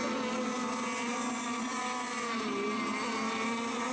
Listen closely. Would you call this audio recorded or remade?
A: recorded